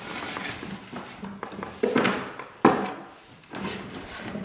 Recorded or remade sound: recorded